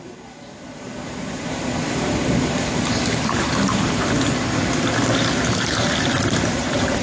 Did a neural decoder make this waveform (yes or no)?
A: yes